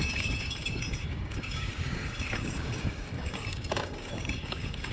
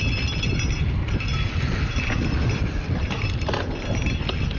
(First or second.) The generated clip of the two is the first